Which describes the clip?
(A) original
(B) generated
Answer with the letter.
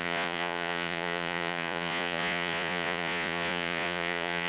B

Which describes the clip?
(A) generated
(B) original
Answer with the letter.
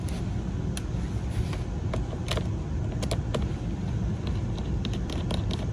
B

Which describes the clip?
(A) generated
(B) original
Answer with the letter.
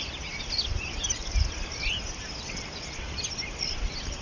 B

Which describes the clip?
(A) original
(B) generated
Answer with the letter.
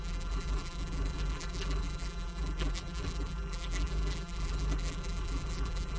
B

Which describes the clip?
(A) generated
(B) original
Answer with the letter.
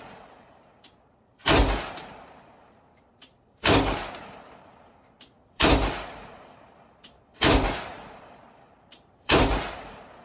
A